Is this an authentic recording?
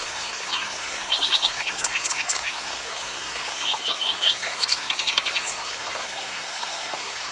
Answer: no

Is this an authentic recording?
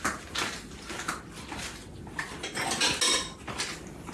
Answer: yes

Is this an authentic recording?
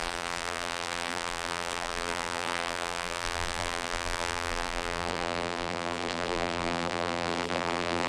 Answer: no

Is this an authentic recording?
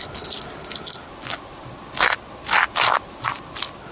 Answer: yes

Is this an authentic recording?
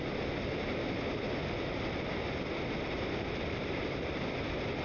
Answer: yes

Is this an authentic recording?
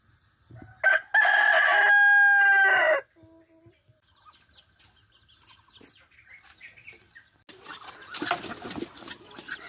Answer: yes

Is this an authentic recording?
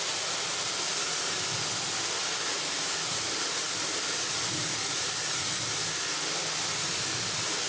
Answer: yes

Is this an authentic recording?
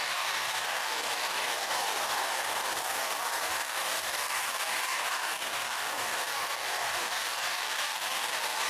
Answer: no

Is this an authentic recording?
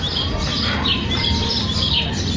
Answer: no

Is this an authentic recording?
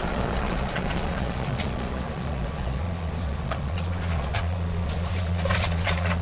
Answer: no